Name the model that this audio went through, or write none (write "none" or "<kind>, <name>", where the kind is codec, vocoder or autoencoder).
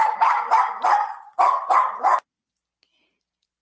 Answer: none